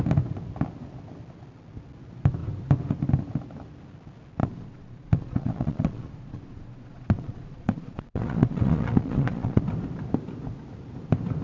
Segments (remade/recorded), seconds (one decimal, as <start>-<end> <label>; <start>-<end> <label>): 0.0-4.4 recorded; 4.4-9.6 remade; 9.6-11.4 recorded